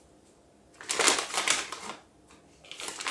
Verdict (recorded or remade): remade